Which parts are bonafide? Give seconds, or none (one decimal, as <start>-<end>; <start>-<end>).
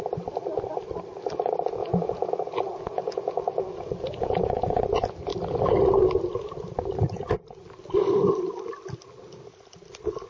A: 0.0-1.8; 2.3-2.7; 4.8-10.3